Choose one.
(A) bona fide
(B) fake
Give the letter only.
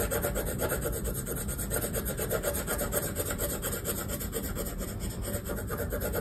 A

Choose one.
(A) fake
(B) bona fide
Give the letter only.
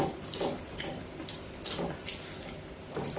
A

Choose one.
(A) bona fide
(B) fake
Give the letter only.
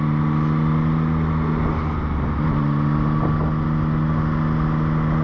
A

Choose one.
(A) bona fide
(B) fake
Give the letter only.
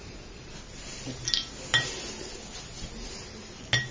A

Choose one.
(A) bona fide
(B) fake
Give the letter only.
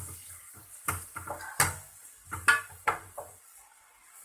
B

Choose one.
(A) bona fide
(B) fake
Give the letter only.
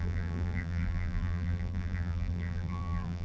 B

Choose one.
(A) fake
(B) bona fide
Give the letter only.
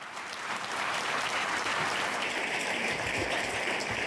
A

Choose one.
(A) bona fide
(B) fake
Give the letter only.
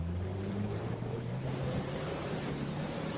B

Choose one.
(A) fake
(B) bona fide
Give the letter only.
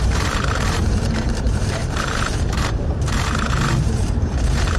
A